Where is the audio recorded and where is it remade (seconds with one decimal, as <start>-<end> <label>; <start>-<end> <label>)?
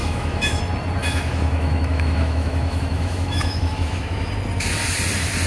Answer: 0.0-0.6 remade; 0.6-1.0 recorded; 1.0-4.3 remade; 4.3-5.5 recorded